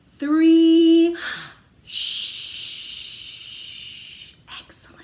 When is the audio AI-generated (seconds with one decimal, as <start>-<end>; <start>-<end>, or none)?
none